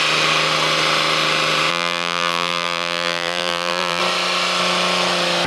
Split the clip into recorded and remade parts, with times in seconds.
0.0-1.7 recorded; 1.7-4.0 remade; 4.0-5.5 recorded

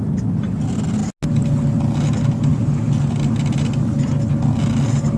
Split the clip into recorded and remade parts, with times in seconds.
0.0-5.2 recorded

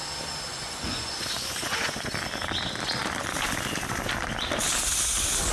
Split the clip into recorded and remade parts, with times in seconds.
0.0-0.5 recorded; 0.5-2.1 remade; 2.1-5.5 recorded

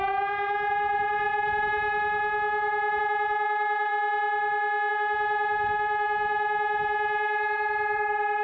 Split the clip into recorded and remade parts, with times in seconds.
0.0-3.9 remade; 3.9-4.9 recorded; 4.9-8.4 remade